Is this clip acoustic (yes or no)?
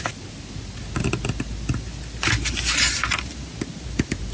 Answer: yes